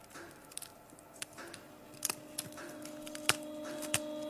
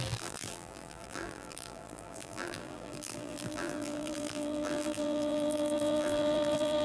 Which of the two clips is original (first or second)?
first